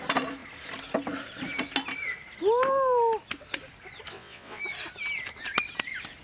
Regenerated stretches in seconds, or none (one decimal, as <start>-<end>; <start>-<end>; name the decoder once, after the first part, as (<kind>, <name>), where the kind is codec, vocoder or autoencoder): 4.1-4.6 (vocoder, WaveNeXt)